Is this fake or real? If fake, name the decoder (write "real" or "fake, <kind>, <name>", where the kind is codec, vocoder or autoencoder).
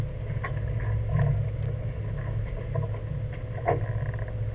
real